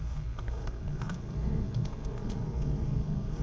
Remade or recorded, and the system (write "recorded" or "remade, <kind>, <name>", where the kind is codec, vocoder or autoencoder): remade, codec, SNAC